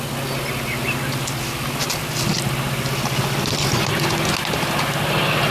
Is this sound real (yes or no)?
yes